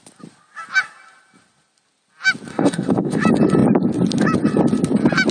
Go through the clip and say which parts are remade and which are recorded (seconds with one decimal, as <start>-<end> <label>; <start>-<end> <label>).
0.0-2.5 recorded; 2.5-3.2 remade; 3.2-5.3 recorded